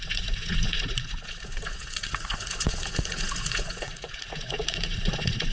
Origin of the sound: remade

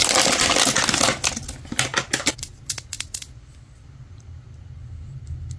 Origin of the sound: recorded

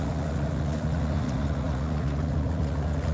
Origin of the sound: remade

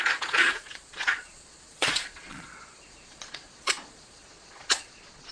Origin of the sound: remade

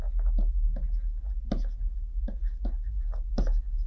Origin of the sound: recorded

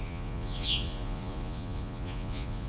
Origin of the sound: remade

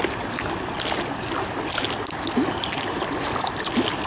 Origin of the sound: recorded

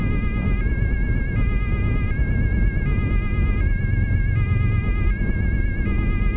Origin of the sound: recorded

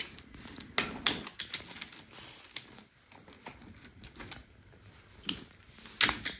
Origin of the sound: recorded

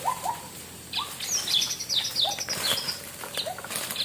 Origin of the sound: recorded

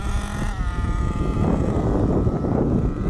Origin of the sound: recorded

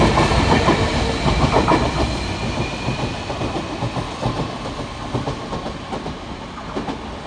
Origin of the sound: recorded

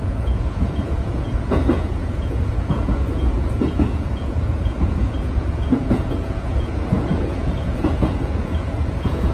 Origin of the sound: remade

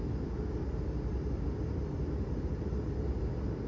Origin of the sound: recorded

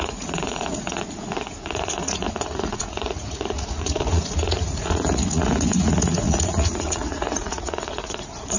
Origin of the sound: remade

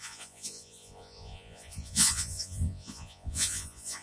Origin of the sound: remade